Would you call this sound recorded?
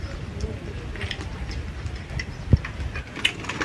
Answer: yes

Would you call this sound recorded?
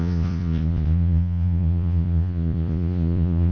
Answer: no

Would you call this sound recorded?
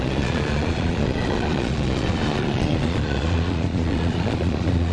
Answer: no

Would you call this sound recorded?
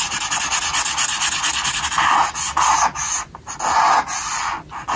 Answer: yes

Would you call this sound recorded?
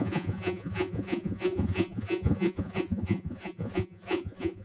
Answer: no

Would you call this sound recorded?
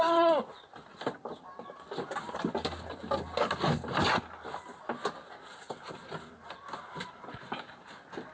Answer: yes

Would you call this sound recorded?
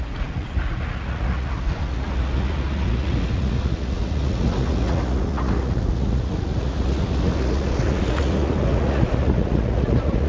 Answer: no